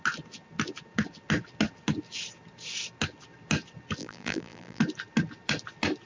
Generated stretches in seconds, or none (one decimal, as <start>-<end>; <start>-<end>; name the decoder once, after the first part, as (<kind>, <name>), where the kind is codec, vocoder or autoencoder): 4.0-4.8 (vocoder, BigVGAN v2)